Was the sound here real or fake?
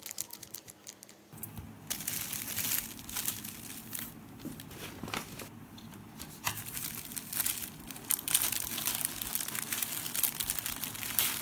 real